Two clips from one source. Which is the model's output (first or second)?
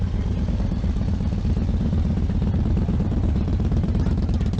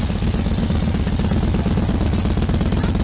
first